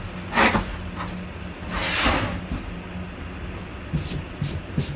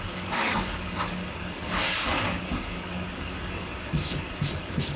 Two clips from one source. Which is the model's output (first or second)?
second